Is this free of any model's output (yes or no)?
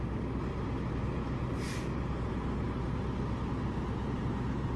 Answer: yes